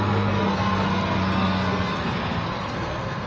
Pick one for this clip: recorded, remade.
remade